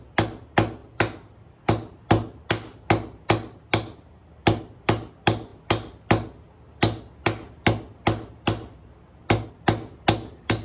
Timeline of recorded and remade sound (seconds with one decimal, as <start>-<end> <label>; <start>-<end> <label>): 0.0-10.6 recorded